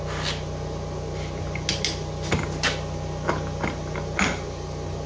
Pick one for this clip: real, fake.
real